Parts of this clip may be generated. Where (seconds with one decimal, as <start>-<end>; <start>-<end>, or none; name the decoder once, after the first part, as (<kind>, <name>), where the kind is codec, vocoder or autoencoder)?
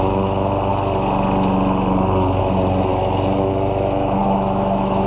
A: 0.0-0.7 (autoencoder, DAC-VAE); 2.4-5.1